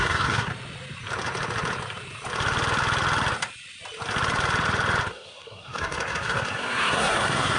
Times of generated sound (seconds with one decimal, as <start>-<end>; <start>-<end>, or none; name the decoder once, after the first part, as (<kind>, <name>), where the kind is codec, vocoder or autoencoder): 0.0-0.5 (codec, SNAC); 5.1-7.6